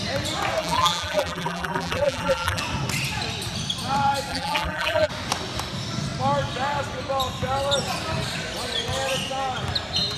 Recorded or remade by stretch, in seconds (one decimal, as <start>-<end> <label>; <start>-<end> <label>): 0.0-0.6 recorded; 0.6-2.6 remade; 2.6-4.3 recorded; 4.3-5.1 remade; 5.1-10.2 recorded